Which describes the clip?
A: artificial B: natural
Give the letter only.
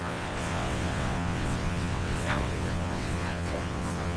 A